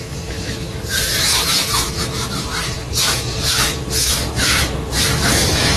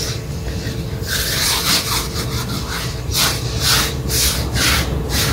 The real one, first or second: second